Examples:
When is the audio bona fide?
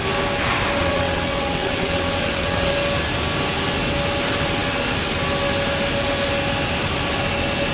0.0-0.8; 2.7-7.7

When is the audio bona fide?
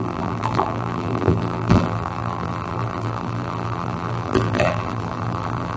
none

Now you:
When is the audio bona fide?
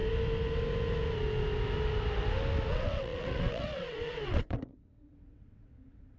0.0-2.7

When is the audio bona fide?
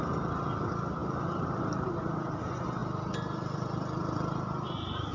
0.0-5.1